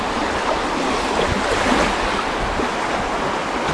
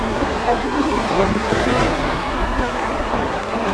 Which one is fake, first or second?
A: second